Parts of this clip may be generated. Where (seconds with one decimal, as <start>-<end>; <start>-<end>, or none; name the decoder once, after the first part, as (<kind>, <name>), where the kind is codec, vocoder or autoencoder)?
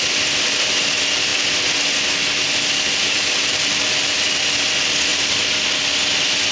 none